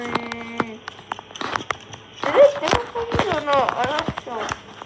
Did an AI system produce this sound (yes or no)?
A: no